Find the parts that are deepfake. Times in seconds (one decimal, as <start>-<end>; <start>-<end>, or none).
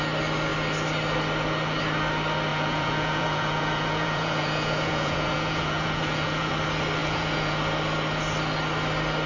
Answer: 2.5-6.5; 7.0-7.6